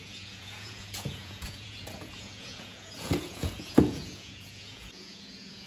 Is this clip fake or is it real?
fake